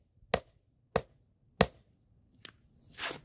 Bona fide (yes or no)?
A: yes